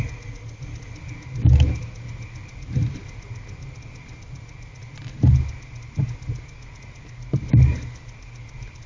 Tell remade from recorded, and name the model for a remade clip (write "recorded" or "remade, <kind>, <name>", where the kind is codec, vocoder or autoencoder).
recorded